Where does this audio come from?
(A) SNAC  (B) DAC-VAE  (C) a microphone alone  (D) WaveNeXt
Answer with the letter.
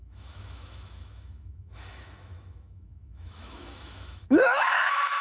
B